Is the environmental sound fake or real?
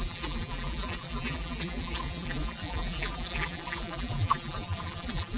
fake